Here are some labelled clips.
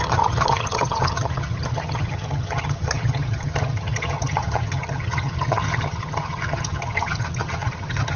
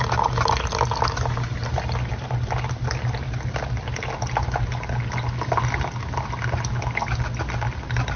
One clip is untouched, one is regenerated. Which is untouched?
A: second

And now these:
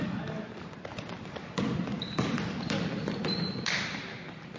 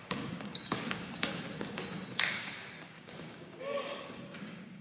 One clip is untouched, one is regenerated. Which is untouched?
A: first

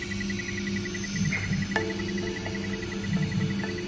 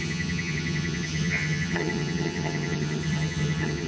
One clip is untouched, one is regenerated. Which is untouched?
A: first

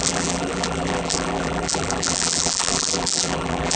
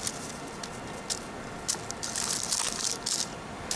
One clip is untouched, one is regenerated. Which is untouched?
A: second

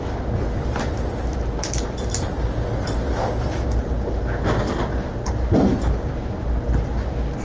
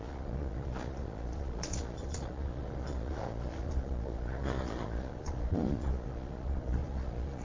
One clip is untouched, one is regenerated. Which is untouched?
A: first